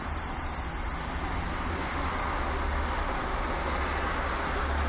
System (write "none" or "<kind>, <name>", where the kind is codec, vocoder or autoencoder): none